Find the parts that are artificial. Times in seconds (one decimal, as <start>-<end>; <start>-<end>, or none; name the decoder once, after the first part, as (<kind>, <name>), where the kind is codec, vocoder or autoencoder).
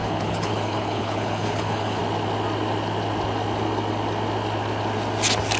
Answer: 0.0-2.0 (codec, HILCodec)